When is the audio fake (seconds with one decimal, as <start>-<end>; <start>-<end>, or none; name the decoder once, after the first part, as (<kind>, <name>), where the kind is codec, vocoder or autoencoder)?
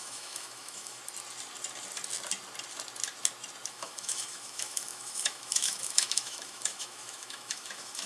0.0-1.0 (autoencoder, DAC-VAE); 3.7-8.1